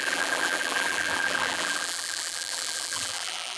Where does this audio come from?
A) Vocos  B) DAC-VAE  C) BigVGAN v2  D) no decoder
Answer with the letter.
C